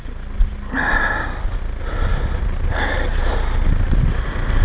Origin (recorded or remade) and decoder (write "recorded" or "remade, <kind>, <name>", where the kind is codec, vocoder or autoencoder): recorded